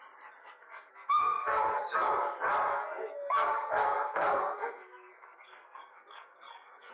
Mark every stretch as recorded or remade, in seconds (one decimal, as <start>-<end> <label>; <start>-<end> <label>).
0.0-0.4 recorded; 0.4-2.1 remade; 2.1-2.7 recorded; 2.7-6.9 remade